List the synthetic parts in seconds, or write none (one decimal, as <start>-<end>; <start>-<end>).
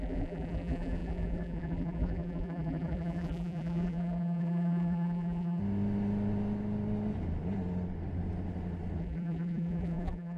0.0-5.6; 9.0-10.4